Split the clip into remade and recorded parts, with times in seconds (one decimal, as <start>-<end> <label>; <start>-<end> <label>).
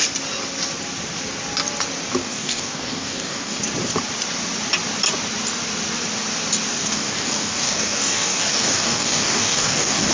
0.0-2.2 recorded; 2.2-3.6 remade; 3.6-6.8 recorded; 6.8-10.1 remade